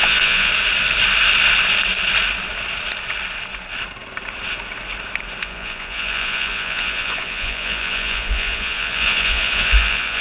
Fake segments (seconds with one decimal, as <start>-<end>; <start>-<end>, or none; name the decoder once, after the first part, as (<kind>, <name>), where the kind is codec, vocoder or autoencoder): 0.0-0.5 (vocoder, Vocos); 5.4-10.2